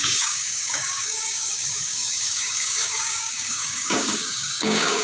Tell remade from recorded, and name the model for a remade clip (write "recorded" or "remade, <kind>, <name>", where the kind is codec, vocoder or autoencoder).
remade, codec, DAC